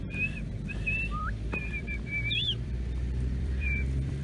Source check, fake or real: fake